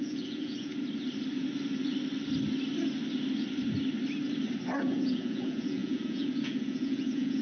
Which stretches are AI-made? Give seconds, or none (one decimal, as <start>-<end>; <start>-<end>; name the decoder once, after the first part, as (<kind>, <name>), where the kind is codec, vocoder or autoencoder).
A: 0.0-0.7 (vocoder, Vocos); 4.8-7.4